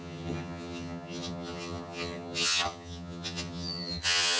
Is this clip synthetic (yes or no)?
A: yes